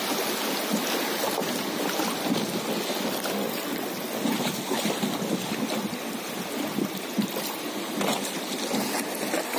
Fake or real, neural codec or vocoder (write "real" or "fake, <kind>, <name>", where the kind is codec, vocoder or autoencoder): real